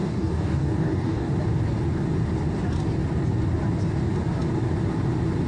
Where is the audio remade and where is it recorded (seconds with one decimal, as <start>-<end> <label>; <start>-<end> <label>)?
0.0-1.3 remade; 1.3-5.5 recorded